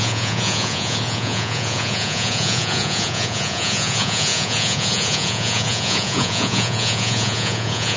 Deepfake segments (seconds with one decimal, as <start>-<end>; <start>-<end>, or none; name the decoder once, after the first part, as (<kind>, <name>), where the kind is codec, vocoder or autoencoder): 0.0-8.0 (vocoder, Vocos)